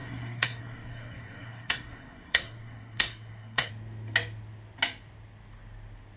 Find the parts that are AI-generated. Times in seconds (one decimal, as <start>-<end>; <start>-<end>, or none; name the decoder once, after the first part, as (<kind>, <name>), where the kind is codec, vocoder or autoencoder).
0.0-3.7 (codec, SNAC)